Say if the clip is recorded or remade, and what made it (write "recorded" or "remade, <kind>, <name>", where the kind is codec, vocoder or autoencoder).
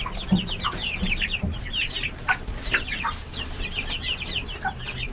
recorded